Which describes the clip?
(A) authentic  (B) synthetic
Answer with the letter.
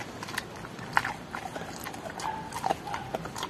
A